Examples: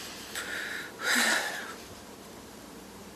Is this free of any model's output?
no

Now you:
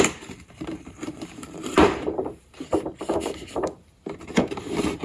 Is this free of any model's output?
no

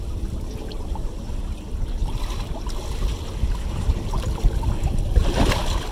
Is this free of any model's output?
yes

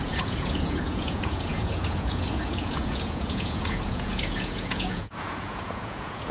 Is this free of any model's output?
no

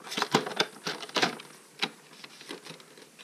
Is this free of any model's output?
yes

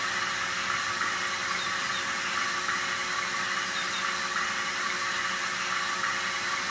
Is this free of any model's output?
yes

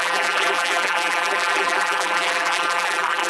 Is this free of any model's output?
no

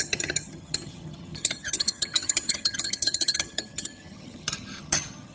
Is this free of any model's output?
no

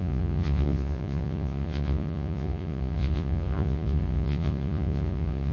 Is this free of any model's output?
no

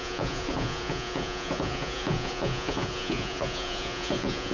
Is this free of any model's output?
no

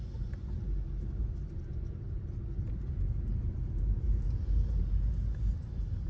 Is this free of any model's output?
yes